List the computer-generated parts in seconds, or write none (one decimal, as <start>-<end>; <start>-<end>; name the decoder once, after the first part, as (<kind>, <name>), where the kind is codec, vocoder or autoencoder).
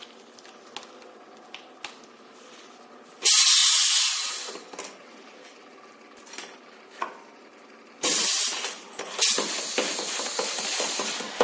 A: none